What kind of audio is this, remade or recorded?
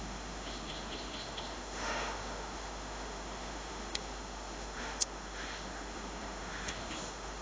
remade